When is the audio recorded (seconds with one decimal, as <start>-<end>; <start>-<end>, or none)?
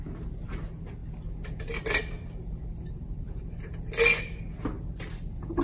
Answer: 0.0-5.6